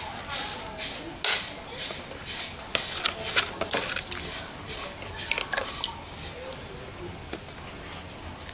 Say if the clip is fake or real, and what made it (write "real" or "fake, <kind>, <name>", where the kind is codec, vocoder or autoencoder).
real